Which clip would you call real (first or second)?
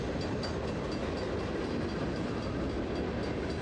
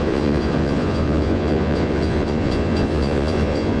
first